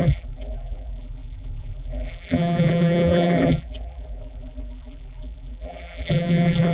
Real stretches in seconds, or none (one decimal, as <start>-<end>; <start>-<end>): none